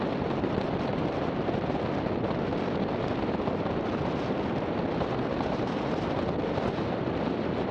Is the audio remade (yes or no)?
no